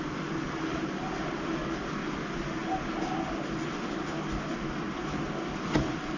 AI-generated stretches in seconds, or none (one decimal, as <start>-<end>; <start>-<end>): none